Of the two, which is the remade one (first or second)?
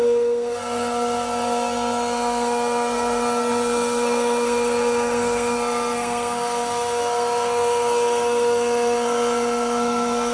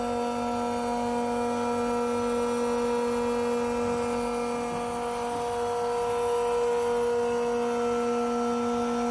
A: first